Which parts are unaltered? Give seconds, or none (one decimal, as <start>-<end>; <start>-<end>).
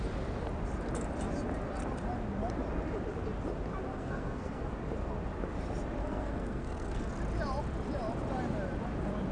0.0-3.9; 4.7-6.0; 7.1-9.3